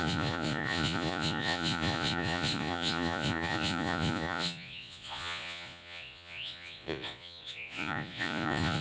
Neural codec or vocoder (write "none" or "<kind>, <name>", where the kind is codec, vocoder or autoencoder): vocoder, Vocos